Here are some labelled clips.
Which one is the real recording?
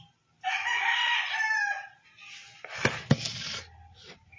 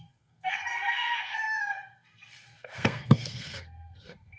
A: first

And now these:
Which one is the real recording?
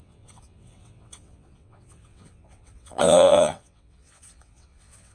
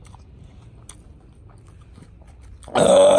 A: second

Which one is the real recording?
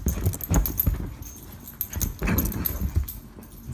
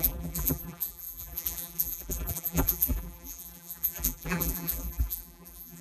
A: first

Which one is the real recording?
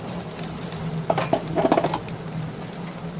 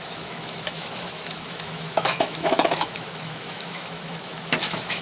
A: first